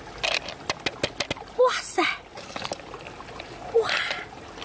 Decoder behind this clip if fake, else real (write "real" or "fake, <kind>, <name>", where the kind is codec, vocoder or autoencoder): real